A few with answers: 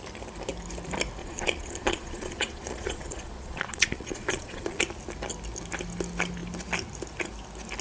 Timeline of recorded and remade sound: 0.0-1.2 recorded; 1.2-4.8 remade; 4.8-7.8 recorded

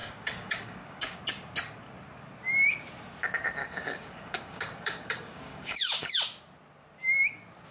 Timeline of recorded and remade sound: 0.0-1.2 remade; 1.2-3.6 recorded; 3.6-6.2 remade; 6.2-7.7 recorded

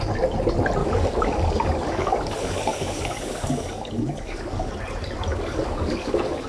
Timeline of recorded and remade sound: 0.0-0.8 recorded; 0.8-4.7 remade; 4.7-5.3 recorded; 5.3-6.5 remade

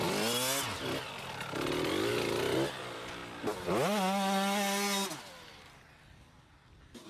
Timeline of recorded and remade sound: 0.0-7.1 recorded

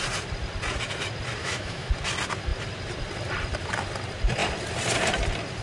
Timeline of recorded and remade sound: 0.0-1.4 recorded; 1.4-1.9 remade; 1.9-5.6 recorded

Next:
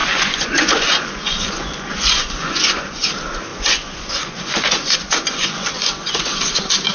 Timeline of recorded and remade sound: 0.0-3.1 remade; 3.1-3.5 recorded; 3.5-6.4 remade; 6.4-6.9 recorded